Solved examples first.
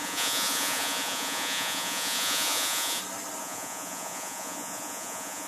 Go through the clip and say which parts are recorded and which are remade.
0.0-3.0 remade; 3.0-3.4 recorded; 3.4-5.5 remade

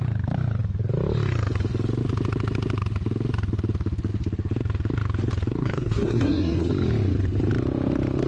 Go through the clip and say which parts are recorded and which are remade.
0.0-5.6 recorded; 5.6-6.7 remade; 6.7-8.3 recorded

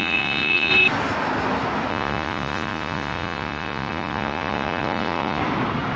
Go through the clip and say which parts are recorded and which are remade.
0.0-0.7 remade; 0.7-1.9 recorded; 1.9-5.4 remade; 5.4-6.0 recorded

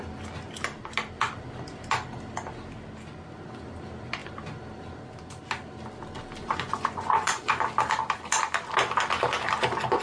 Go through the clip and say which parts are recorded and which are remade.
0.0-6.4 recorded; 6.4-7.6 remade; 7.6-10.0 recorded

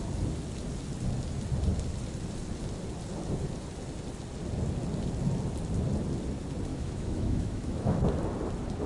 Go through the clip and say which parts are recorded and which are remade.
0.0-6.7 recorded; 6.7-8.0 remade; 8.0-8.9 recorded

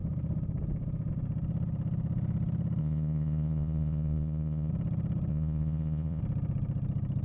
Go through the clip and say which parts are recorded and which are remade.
0.0-2.8 recorded; 2.8-4.7 remade; 4.7-5.3 recorded; 5.3-6.2 remade; 6.2-7.2 recorded

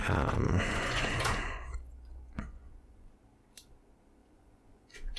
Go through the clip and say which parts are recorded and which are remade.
0.0-3.1 remade; 3.1-4.2 recorded; 4.2-5.2 remade

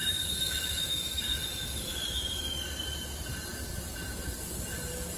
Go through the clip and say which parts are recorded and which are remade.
0.0-2.6 remade; 2.6-5.2 recorded